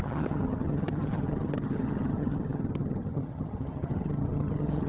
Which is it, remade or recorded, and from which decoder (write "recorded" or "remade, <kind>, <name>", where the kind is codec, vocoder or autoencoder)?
remade, vocoder, HiFi-GAN